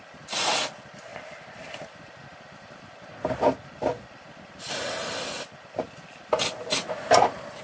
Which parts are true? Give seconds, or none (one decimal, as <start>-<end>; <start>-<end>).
0.0-7.6